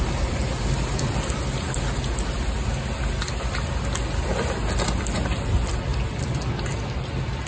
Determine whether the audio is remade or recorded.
recorded